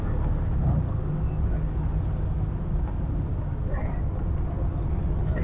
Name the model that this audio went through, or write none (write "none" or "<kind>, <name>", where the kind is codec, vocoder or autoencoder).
none